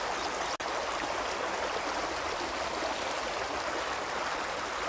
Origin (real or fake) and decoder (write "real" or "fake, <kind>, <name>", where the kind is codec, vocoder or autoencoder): real